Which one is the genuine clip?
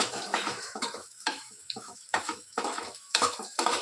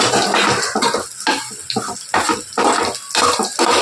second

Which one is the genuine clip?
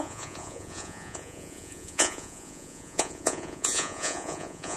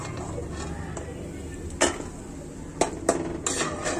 second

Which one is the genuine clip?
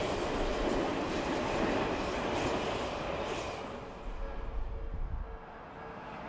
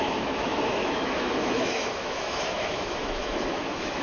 first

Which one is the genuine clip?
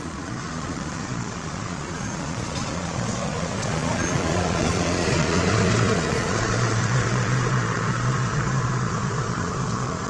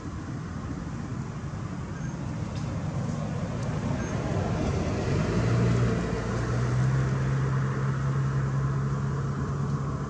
second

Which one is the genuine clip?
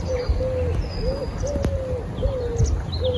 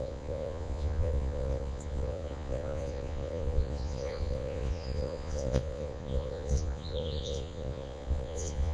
first